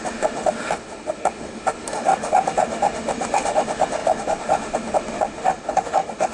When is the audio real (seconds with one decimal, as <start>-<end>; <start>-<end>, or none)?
none